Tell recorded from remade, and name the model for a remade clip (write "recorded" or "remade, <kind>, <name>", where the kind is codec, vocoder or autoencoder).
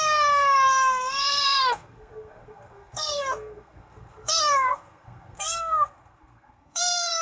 remade, codec, SNAC